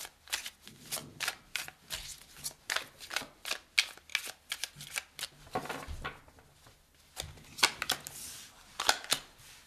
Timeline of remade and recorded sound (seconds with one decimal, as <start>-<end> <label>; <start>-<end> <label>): 0.0-9.7 recorded